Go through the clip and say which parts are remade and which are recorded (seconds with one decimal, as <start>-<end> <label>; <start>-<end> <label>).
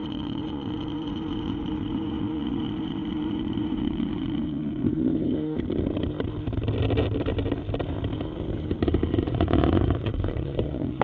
0.0-5.1 remade; 5.1-9.1 recorded; 9.1-11.0 remade